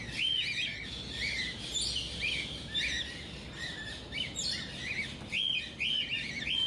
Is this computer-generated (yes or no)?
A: no